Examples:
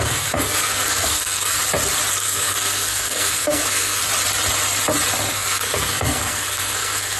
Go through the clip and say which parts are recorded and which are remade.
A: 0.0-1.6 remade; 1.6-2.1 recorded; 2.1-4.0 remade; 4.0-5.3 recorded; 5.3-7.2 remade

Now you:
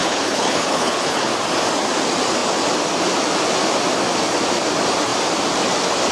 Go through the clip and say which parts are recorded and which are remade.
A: 0.0-1.3 remade; 1.3-6.1 recorded

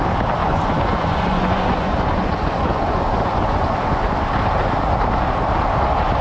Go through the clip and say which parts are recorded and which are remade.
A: 0.0-0.4 recorded; 0.4-4.1 remade; 4.1-6.2 recorded

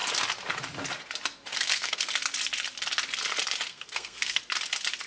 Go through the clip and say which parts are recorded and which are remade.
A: 0.0-1.5 recorded; 1.5-2.1 remade; 2.1-3.7 recorded; 3.7-4.4 remade; 4.4-5.1 recorded